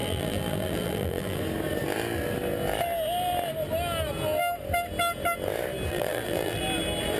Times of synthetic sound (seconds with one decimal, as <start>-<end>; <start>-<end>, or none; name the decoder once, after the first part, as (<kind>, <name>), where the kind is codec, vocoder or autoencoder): 0.0-1.4 (vocoder, BigVGAN v2); 5.9-6.6